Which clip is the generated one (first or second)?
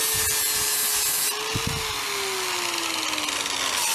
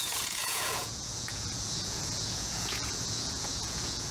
second